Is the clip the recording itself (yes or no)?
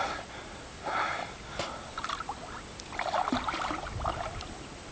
no